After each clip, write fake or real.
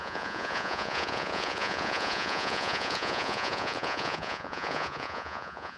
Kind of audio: fake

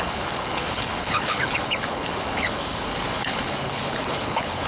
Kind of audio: fake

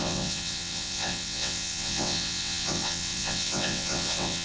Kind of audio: fake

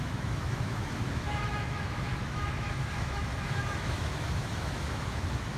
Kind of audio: fake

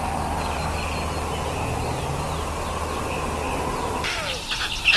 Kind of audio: real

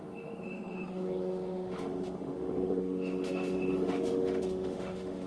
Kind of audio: fake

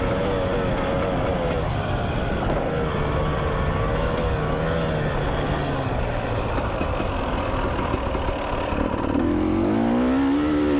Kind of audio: real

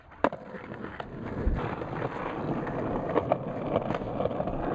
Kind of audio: real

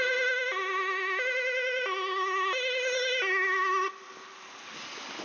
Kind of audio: real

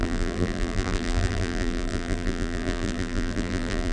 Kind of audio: fake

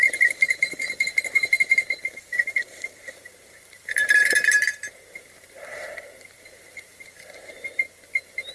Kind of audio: fake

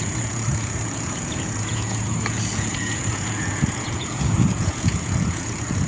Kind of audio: fake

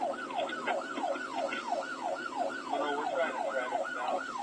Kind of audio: real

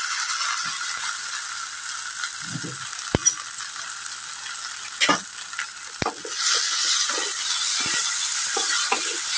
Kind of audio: real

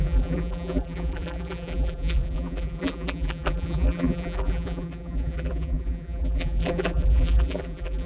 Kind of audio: fake